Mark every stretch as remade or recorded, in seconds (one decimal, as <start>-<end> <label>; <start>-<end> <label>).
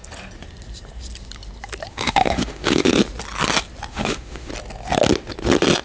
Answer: 0.0-1.9 recorded; 1.9-2.9 remade; 2.9-3.9 recorded; 3.9-4.5 remade; 4.5-5.8 recorded